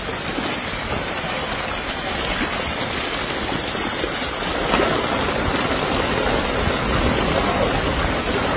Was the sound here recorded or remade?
recorded